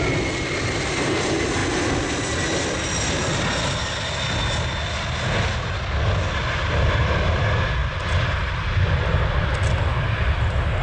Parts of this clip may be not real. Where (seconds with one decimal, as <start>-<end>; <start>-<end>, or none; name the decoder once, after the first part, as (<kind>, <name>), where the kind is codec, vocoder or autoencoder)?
none